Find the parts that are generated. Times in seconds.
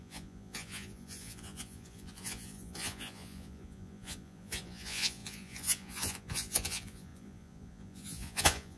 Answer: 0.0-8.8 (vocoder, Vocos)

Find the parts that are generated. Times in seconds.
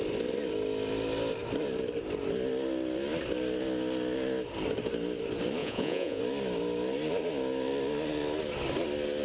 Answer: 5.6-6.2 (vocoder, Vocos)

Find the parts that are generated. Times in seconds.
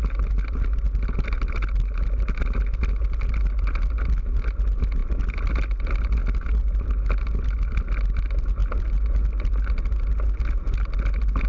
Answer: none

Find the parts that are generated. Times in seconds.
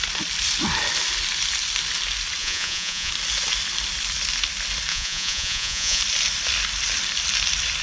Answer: 2.4-3.1 (vocoder, Vocos); 4.9-6.0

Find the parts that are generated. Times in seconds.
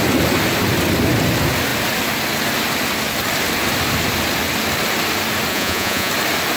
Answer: 5.5-6.1 (vocoder, Vocos)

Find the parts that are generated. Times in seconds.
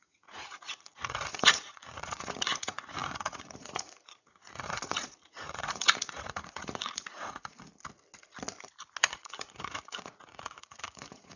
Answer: 0.0-7.7 (vocoder, Vocos); 9.0-11.4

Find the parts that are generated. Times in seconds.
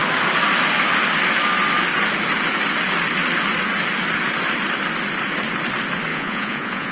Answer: 6.1-6.9 (vocoder, Vocos)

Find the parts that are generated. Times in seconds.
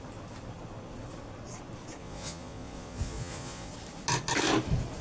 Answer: 2.0-3.7 (vocoder, Vocos)